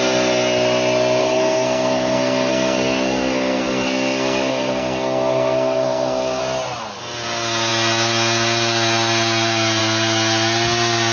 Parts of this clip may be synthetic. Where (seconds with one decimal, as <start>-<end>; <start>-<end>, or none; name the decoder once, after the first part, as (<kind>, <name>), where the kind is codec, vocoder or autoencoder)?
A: 1.2-6.4 (codec, SNAC)